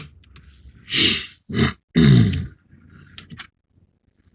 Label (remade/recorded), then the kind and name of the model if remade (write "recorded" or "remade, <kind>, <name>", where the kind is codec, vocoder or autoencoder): recorded